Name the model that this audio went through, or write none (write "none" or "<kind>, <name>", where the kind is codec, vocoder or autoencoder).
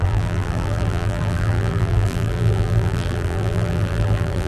vocoder, BigVGAN v2